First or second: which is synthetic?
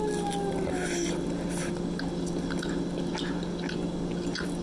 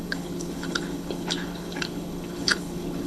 second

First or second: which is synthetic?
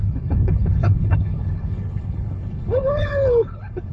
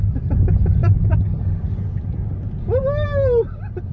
first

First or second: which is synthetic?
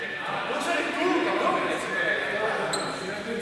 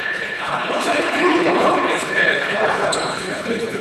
second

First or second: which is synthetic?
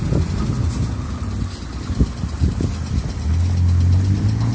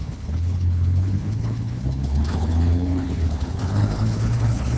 second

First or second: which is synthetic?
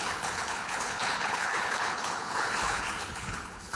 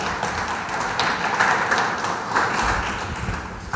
first